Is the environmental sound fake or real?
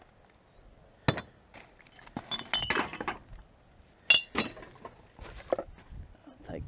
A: real